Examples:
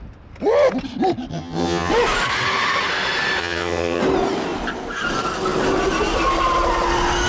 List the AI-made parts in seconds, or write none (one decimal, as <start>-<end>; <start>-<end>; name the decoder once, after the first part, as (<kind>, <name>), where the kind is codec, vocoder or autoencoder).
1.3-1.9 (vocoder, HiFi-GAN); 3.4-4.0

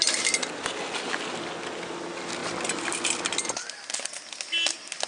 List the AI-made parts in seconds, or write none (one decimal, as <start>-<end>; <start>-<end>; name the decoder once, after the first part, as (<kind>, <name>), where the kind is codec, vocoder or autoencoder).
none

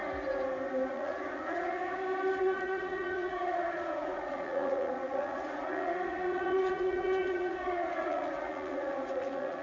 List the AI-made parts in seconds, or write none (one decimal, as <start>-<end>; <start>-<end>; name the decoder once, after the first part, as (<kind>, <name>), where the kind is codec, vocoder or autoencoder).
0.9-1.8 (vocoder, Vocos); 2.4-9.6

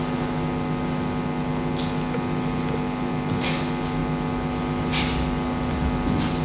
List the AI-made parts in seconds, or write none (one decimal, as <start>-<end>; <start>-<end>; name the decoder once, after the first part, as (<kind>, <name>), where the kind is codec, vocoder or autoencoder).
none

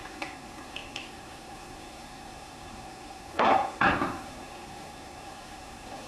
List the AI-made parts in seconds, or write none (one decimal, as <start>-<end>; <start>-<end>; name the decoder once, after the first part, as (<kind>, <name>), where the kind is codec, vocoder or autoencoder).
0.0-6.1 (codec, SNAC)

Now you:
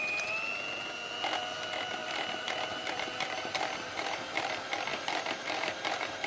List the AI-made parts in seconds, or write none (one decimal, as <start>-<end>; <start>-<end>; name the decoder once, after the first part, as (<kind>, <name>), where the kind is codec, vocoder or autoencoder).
2.0-4.5 (vocoder, BigVGAN v2); 4.9-6.3

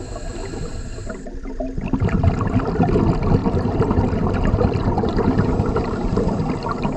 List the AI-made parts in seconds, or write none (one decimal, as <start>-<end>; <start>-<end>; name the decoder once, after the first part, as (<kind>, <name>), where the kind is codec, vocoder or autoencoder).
0.4-1.6 (vocoder, BigVGAN v2); 3.4-6.4

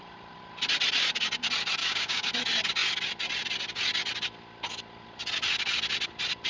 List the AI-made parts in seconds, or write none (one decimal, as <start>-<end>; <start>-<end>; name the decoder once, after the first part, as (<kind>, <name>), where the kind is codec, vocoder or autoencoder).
1.8-2.3 (codec, DAC)